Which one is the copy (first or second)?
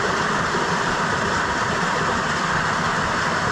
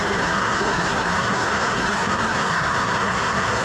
second